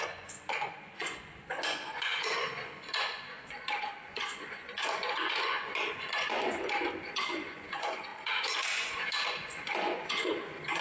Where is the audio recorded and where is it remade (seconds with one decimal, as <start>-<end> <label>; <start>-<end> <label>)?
0.0-10.8 remade